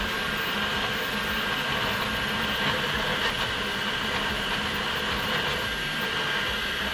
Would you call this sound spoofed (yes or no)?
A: no